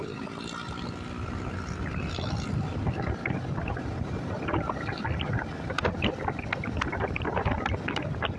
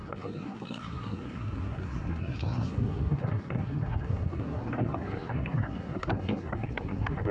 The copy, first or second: second